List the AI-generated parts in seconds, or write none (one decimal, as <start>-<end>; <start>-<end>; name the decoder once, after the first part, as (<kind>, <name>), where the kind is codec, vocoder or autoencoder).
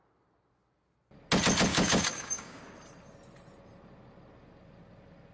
1.7-2.6 (codec, DAC)